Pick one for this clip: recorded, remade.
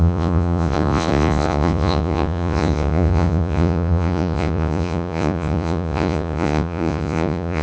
remade